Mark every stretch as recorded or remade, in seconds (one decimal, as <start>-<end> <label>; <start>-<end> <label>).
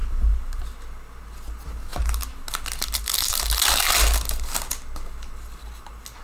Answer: 0.0-0.6 remade; 0.6-6.2 recorded